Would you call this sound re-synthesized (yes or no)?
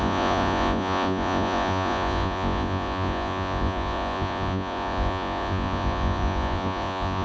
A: yes